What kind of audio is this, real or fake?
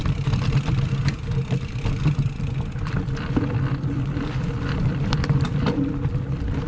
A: fake